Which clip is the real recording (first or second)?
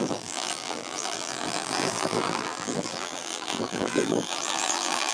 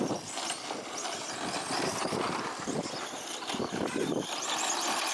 second